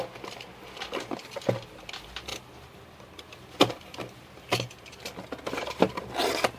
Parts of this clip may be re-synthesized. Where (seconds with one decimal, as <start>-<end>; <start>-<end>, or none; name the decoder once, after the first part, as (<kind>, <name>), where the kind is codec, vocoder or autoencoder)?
none